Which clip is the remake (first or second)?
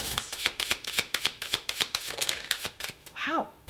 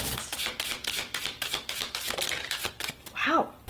first